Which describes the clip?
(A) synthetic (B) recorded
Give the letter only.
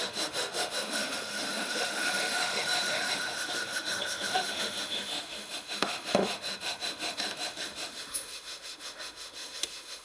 A